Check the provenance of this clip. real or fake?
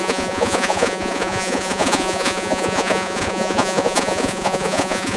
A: fake